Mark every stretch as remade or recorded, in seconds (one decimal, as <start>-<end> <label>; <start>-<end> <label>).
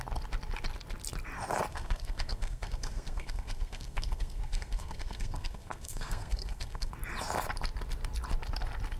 0.0-1.7 recorded; 1.7-6.9 remade; 6.9-9.0 recorded